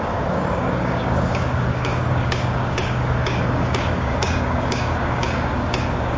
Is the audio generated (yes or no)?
yes